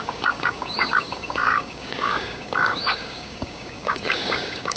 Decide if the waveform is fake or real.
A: fake